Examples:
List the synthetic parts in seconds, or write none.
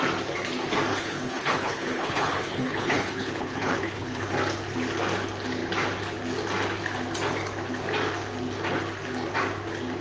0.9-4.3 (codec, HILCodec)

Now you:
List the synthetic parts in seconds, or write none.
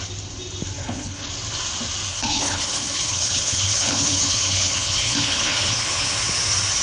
0.8-1.3 (codec, HILCodec); 2.1-6.2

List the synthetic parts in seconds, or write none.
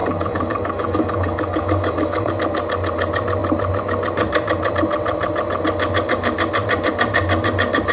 0.0-2.3 (codec, DAC)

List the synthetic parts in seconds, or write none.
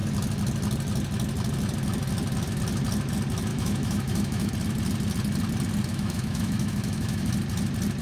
3.5-4.5 (autoencoder, DAC-VAE); 5.9-7.3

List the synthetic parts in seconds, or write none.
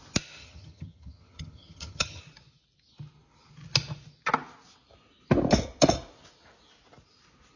0.4-2.2 (vocoder, HiFi-GAN)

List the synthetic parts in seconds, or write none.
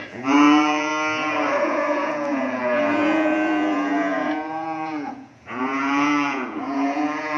0.0-0.9 (vocoder, Vocos); 1.6-7.4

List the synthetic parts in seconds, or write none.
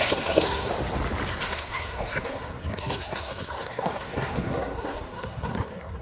0.0-0.7 (codec, SNAC); 1.3-6.0